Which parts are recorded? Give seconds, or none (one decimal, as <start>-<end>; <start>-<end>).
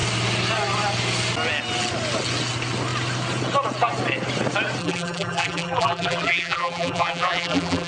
0.0-4.8